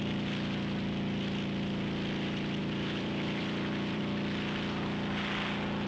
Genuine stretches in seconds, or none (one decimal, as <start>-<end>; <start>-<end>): 0.0-2.6; 4.0-5.9